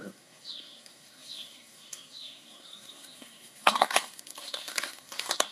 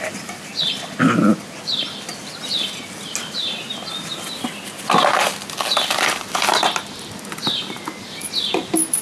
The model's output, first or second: first